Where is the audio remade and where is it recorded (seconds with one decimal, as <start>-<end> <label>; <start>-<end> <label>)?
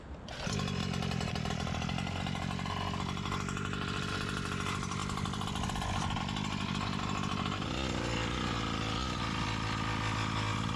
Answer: 0.0-10.8 recorded